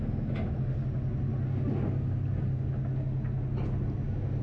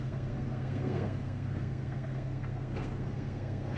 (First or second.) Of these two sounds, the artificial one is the second